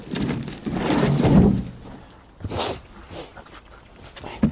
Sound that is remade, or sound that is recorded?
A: recorded